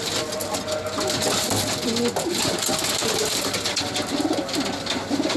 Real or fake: real